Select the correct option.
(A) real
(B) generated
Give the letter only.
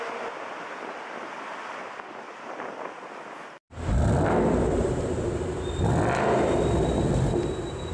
A